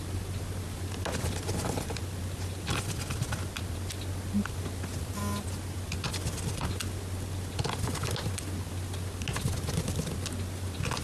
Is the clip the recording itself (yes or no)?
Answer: yes